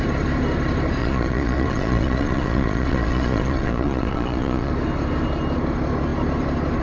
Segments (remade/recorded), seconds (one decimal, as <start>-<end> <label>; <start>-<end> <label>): 0.0-1.0 recorded; 1.0-4.7 remade; 4.7-6.8 recorded